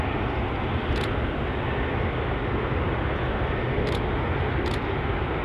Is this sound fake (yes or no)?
no